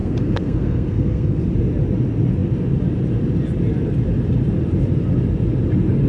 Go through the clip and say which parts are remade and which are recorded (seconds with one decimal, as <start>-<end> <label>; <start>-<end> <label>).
0.0-1.4 remade; 1.4-6.1 recorded